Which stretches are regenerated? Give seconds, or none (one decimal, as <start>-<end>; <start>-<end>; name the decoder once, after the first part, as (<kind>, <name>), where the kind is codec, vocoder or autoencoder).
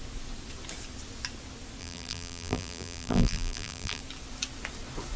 1.8-4.0 (vocoder, BigVGAN v2)